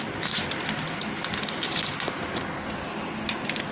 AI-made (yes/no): no